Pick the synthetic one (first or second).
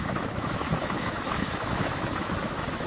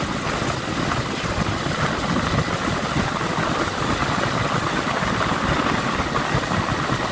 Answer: first